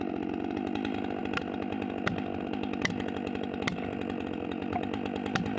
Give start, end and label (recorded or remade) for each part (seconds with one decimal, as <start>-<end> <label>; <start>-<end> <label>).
0.0-5.6 recorded